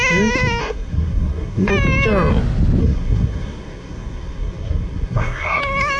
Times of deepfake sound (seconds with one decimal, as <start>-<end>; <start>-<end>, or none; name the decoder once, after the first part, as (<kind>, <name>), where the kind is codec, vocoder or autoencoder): 0.6-1.7 (codec, SNAC); 2.8-5.6